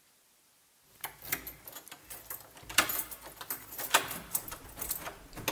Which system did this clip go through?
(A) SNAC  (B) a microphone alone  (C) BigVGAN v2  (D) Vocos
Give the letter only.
B